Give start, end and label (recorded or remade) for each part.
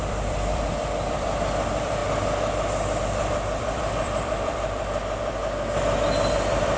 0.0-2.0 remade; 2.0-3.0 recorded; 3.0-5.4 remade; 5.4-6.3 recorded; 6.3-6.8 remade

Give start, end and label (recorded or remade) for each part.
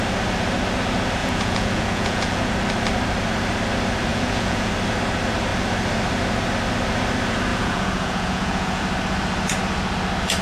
0.0-1.2 recorded; 1.2-2.4 remade; 2.4-4.1 recorded; 4.1-4.7 remade; 4.7-7.5 recorded; 7.5-8.8 remade; 8.8-10.4 recorded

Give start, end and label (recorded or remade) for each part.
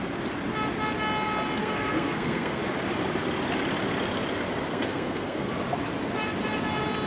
0.0-1.6 recorded; 1.6-2.6 remade; 2.6-4.7 recorded; 4.7-5.5 remade; 5.5-7.1 recorded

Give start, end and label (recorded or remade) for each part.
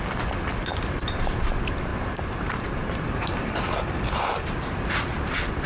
0.0-0.7 recorded; 0.7-1.4 remade; 1.4-1.9 recorded; 1.9-5.3 remade; 5.3-5.7 recorded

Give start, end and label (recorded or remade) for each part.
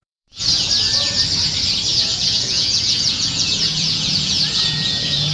0.0-0.7 remade; 0.7-1.9 recorded; 1.9-5.3 remade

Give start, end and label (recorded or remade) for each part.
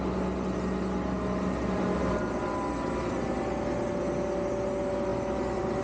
0.0-5.8 recorded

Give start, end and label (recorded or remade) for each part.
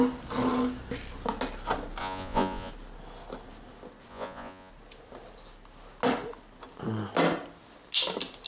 0.0-2.0 recorded; 2.0-2.7 remade; 2.7-4.1 recorded; 4.1-4.7 remade; 4.7-8.5 recorded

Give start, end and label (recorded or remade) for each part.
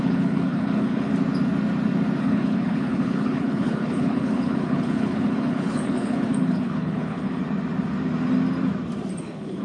0.0-1.1 remade; 1.1-2.2 recorded; 2.2-7.4 remade; 7.4-9.2 recorded; 9.2-9.6 remade